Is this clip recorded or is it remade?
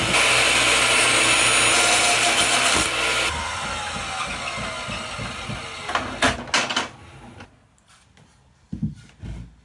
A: recorded